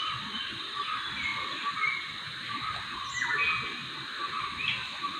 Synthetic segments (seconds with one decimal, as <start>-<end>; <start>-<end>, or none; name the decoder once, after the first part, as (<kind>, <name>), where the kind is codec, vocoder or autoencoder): none